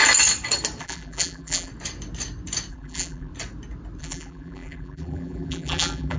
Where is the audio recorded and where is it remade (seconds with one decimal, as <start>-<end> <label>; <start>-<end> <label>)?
0.0-0.8 recorded; 0.8-1.7 remade; 1.7-2.7 recorded; 2.7-3.3 remade; 3.3-4.0 recorded; 4.0-6.2 remade